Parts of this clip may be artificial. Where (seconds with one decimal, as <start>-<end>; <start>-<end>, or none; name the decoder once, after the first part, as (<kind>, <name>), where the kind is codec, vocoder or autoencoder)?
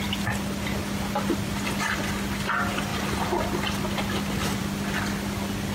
none